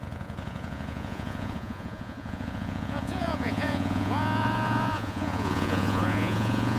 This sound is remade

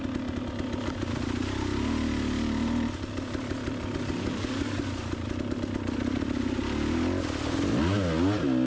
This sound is recorded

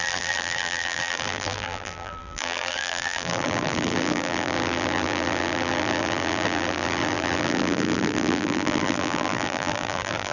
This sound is remade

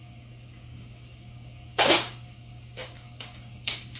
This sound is remade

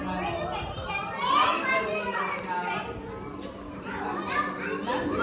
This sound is recorded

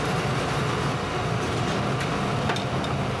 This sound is recorded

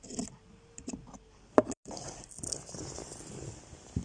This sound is remade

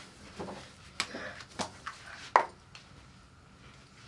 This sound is recorded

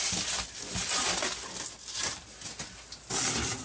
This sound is recorded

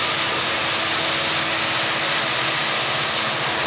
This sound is recorded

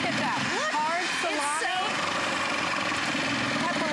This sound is recorded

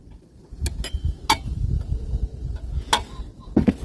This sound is recorded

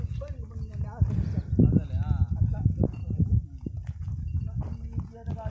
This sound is recorded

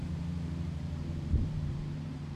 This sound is remade